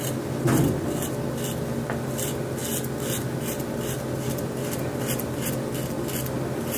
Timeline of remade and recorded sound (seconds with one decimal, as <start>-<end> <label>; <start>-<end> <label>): 0.0-6.8 recorded